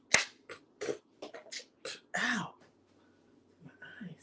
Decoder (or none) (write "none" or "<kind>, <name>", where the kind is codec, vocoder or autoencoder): none